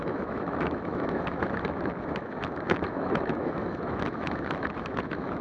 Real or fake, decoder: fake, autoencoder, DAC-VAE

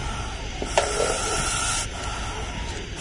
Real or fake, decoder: real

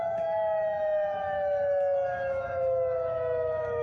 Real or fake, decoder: fake, autoencoder, DAC-VAE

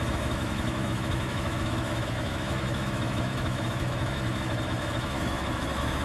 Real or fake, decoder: fake, autoencoder, DAC-VAE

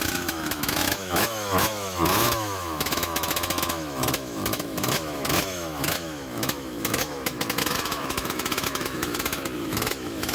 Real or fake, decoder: fake, autoencoder, DAC-VAE